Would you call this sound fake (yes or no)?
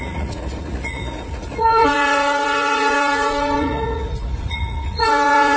yes